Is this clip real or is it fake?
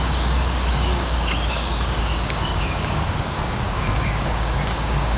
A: fake